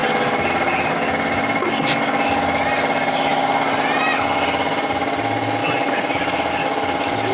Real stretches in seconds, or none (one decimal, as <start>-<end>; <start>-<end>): 0.0-5.6; 6.5-7.3